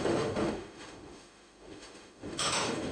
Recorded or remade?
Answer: remade